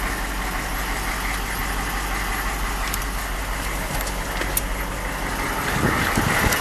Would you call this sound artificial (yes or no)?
no